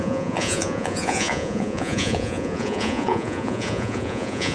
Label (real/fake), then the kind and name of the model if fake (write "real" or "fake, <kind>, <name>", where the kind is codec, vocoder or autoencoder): fake, vocoder, Vocos